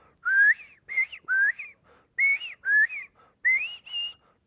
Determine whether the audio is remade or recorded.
recorded